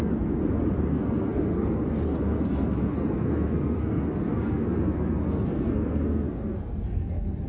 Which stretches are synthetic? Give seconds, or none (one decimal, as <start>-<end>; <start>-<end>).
0.0-0.4; 0.9-7.5